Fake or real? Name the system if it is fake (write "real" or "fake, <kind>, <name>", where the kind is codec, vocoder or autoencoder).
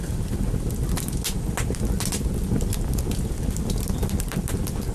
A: real